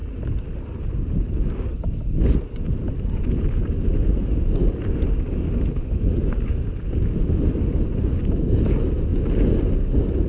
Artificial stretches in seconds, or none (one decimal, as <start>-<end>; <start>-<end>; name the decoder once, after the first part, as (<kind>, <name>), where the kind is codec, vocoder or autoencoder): 0.0-4.5 (vocoder, BigVGAN v2); 5.7-7.6